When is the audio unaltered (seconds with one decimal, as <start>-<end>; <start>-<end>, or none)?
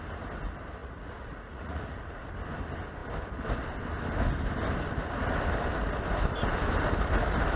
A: 0.0-0.8; 2.3-7.6